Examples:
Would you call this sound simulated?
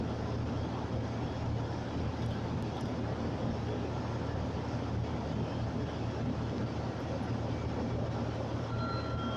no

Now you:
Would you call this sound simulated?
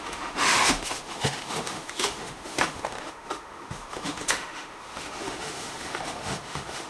yes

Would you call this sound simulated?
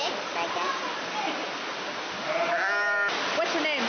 no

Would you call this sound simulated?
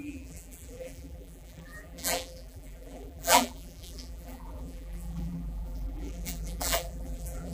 yes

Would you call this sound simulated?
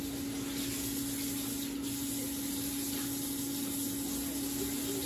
no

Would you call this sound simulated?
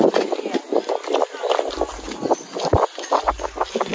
no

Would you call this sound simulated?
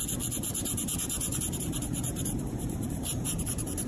yes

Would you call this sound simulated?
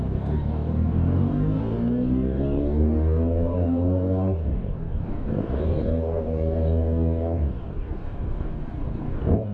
yes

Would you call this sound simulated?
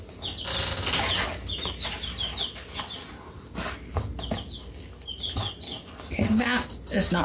no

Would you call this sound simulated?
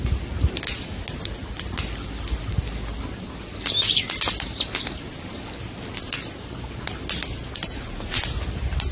no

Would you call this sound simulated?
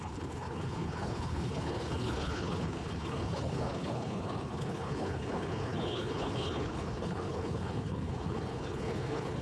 yes